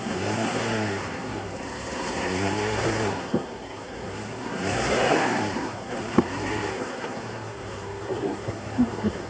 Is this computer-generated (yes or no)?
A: yes